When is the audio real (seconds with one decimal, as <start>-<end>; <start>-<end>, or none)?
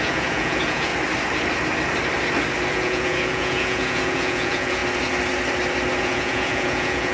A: 0.9-2.7; 4.8-6.0